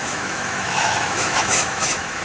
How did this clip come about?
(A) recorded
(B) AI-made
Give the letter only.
B